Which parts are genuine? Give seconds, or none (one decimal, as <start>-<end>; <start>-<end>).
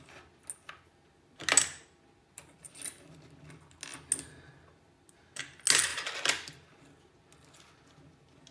0.0-8.5